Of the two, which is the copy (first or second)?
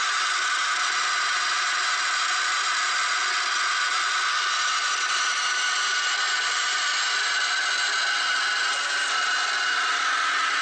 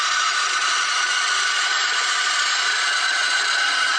second